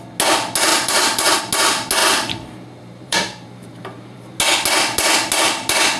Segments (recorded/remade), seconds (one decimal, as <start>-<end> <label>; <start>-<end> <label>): 0.0-0.7 recorded; 0.7-1.4 remade; 1.4-2.0 recorded; 2.0-4.4 remade; 4.4-6.0 recorded